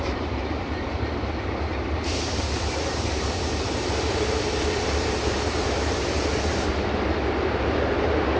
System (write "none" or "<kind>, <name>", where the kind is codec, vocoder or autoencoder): vocoder, BigVGAN v2